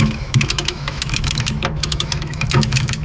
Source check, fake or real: fake